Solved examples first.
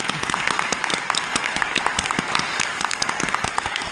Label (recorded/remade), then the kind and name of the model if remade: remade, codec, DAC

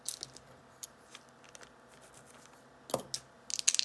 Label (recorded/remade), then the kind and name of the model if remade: recorded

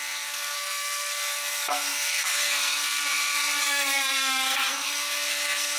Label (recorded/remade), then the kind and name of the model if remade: remade, codec, SNAC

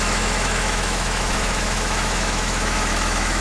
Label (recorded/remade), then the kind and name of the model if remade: remade, autoencoder, DAC-VAE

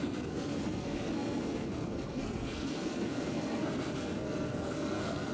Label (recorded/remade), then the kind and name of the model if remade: remade, codec, SNAC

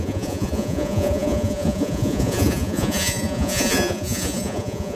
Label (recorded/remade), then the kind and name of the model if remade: remade, vocoder, Vocos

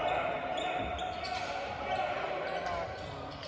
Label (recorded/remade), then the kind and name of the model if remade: recorded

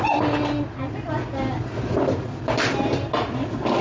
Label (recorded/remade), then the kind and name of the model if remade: recorded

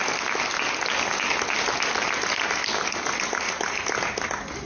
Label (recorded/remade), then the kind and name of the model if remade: recorded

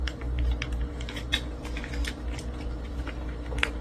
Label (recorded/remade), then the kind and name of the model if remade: remade, vocoder, BigVGAN v2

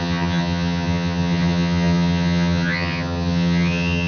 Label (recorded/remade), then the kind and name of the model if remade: remade, vocoder, HiFi-GAN